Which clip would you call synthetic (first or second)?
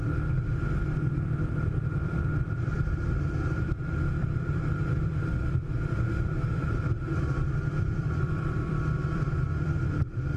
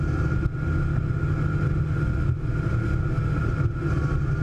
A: first